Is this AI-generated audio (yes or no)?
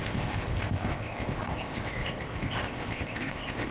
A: yes